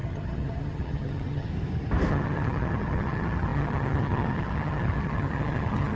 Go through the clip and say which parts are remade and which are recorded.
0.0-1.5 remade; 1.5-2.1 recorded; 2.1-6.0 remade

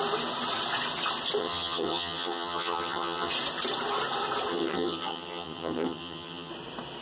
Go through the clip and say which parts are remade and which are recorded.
0.0-1.4 recorded; 1.4-3.3 remade; 3.3-4.5 recorded; 4.5-6.5 remade; 6.5-7.0 recorded

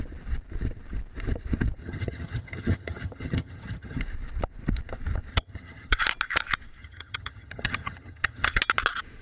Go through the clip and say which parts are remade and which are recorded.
0.0-1.8 recorded; 1.8-4.0 remade; 4.0-5.3 recorded; 5.3-6.0 remade; 6.0-6.8 recorded; 6.8-8.6 remade; 8.6-9.2 recorded